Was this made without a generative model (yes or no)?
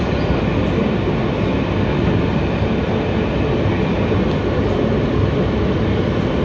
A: yes